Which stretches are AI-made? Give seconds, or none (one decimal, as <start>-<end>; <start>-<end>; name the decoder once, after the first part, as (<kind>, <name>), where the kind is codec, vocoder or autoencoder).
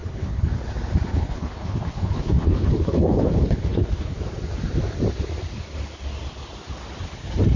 0.0-0.5 (codec, HILCodec); 1.1-4.2